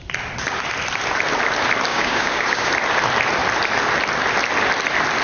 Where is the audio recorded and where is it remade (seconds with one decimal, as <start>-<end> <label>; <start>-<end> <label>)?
0.0-1.9 recorded; 1.9-2.7 remade; 2.7-5.2 recorded